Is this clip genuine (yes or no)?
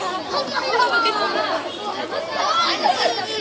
yes